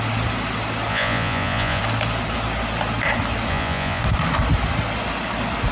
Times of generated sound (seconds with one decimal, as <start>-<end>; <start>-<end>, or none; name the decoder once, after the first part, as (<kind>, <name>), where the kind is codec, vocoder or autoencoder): 0.9-1.8 (vocoder, Vocos); 3.5-4.0